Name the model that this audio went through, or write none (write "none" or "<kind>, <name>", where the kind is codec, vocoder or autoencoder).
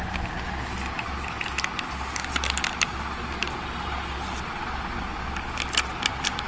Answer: none